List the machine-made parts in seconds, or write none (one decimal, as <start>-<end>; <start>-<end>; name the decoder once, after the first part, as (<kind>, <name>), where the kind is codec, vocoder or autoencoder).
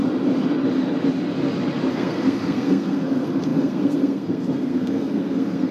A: 1.9-5.7 (codec, SNAC)